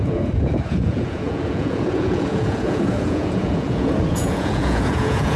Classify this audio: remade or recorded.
remade